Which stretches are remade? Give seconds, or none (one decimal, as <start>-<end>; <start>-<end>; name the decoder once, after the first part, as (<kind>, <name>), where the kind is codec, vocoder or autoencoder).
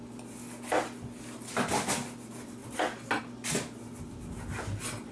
none